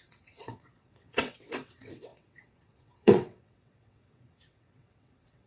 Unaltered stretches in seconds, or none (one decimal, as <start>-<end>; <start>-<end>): none